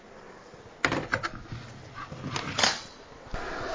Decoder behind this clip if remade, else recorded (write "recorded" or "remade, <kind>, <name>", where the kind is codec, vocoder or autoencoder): recorded